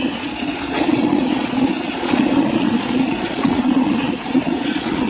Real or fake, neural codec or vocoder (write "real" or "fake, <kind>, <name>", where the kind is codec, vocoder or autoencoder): fake, vocoder, Vocos